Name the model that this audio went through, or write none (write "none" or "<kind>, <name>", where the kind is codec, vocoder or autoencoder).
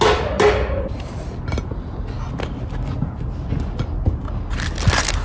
none